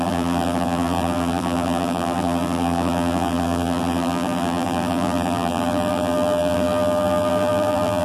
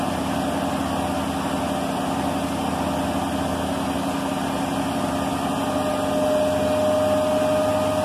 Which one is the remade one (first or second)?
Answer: first